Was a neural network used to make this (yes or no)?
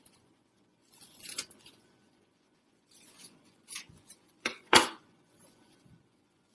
yes